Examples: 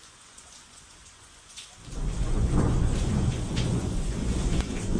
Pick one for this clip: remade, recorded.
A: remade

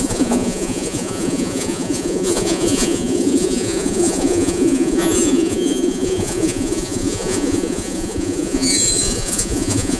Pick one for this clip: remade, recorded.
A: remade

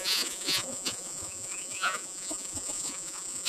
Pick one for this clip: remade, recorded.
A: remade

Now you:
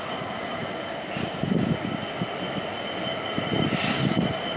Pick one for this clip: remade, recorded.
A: recorded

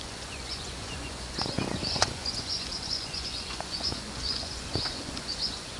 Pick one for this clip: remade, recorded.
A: remade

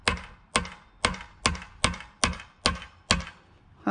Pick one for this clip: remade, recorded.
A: recorded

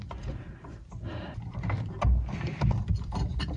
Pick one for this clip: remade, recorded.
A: recorded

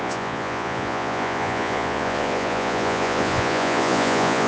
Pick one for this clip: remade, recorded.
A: remade